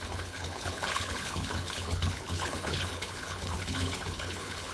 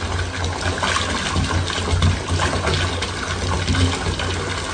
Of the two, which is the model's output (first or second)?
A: first